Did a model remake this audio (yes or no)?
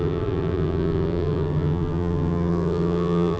yes